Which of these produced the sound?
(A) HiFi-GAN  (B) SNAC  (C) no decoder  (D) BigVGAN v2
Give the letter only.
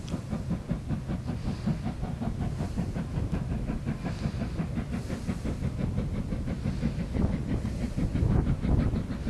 C